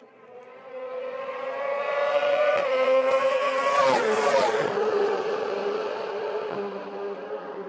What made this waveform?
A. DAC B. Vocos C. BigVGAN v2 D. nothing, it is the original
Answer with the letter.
B